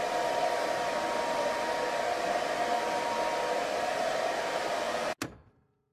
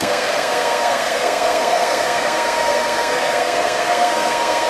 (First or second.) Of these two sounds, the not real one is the second